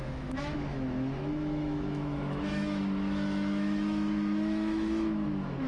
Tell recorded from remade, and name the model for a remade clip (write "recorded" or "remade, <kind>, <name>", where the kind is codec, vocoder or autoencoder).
remade, autoencoder, DAC-VAE